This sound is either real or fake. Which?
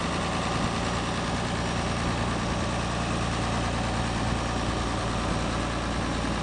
real